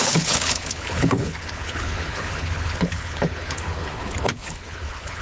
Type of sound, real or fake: fake